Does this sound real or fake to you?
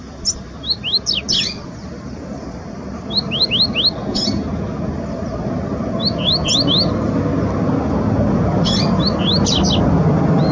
real